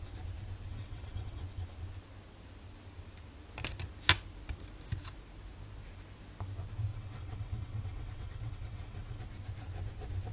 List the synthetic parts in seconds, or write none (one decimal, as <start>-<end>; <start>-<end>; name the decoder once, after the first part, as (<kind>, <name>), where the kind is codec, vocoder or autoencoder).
0.7-1.4 (vocoder, WaveNeXt); 6.9-9.2